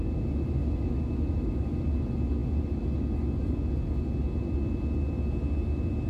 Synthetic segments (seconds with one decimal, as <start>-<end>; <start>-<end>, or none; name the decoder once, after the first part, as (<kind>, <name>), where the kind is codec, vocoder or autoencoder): 0.6-1.8 (autoencoder, DAC-VAE)